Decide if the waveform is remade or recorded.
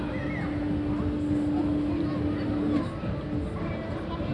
recorded